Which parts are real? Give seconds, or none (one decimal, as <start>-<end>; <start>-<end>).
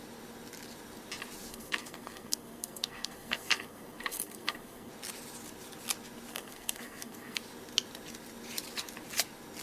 0.0-1.5; 4.9-6.3; 7.4-9.6